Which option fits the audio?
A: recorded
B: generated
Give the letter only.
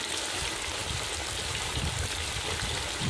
A